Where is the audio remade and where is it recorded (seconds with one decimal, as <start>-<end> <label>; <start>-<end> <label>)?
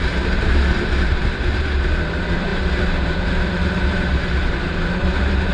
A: 0.0-5.5 remade